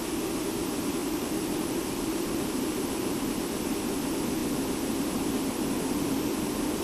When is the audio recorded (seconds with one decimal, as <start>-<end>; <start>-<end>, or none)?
0.0-1.0; 3.4-6.8